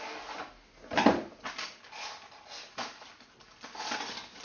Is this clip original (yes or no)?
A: yes